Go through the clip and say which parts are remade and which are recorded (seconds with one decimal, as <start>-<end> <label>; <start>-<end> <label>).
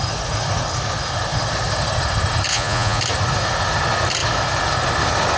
0.0-2.5 recorded; 2.5-3.0 remade; 3.0-5.4 recorded